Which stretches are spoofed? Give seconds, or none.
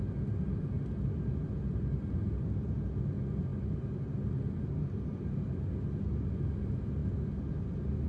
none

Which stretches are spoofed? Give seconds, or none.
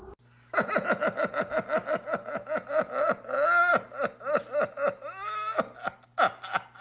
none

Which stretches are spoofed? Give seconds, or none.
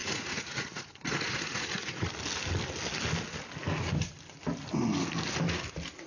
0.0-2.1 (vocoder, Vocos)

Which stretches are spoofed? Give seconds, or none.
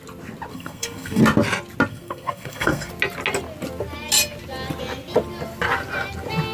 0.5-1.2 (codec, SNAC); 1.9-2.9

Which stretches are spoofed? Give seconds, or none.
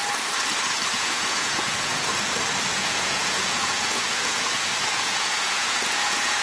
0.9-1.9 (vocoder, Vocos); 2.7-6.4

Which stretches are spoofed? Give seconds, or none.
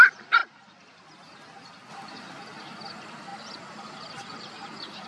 none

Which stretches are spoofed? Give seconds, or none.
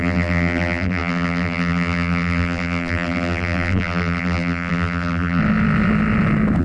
0.0-5.4 (vocoder, BigVGAN v2)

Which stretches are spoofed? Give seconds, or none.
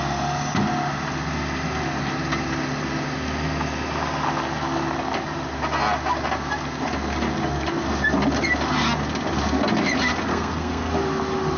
10.3-10.9 (codec, SNAC)